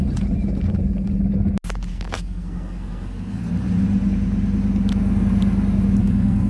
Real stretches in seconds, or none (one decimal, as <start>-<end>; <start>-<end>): 0.0-1.9; 3.4-6.0